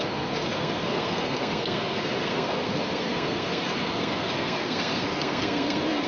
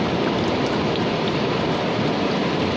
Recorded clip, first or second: second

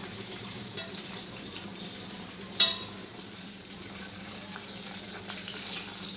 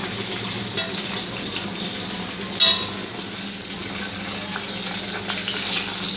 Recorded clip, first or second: second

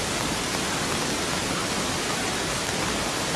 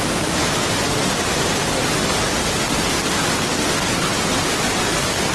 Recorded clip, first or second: second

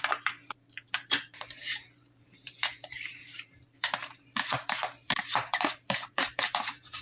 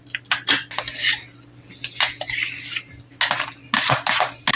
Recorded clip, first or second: second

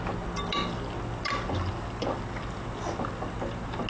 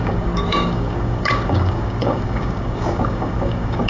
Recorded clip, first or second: first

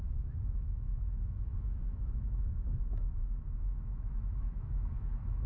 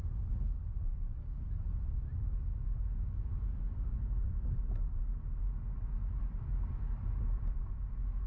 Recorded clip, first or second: second